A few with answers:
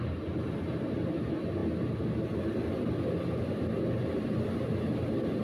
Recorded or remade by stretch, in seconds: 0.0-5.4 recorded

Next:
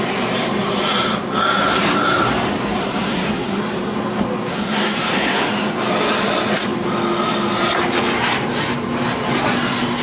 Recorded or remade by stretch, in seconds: 0.0-2.8 recorded; 2.8-3.6 remade; 3.6-4.5 recorded; 4.5-5.5 remade; 5.5-10.0 recorded

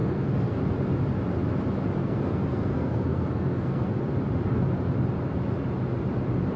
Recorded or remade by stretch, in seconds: 0.0-0.6 remade; 0.6-2.0 recorded; 2.0-4.0 remade; 4.0-6.6 recorded

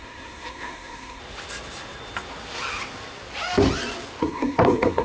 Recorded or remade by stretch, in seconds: 0.0-1.2 remade; 1.2-4.2 recorded; 4.2-5.0 remade